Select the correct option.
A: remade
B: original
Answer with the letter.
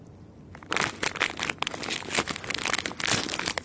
B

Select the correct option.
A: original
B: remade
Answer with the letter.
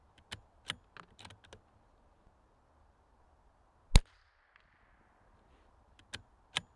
A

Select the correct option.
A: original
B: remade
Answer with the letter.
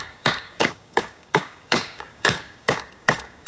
B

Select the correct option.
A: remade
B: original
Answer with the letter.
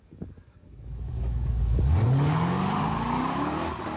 A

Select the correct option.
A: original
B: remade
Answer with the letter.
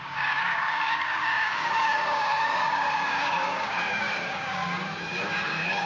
B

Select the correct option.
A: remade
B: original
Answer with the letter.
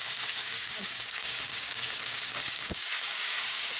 A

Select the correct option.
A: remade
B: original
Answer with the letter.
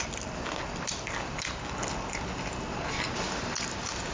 B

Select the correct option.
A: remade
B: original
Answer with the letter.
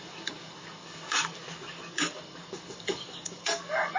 A